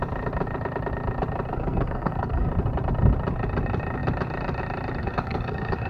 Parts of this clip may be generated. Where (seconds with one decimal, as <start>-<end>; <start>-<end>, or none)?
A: 1.5-2.5; 5.0-5.9